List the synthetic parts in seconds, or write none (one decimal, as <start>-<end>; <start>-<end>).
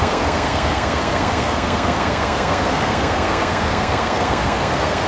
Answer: 0.0-5.1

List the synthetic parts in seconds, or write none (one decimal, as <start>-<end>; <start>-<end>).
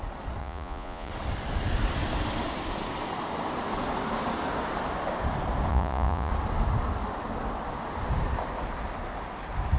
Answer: 0.4-1.1; 5.7-6.3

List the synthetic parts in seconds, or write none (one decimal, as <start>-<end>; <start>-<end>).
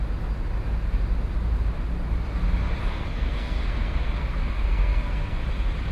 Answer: 2.9-5.4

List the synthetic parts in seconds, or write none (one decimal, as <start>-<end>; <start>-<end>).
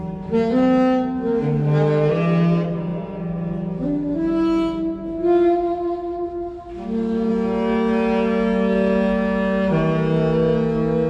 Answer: none